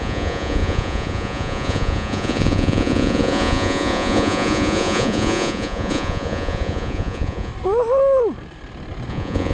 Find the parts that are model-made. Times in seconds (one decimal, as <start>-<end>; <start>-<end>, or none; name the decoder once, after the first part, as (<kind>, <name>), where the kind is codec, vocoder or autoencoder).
0.0-7.5 (vocoder, Vocos); 9.1-9.5